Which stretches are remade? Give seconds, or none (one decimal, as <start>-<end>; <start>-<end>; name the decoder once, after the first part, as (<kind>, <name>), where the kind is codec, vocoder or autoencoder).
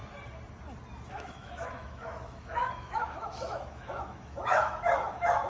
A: 1.1-5.5 (autoencoder, DAC-VAE)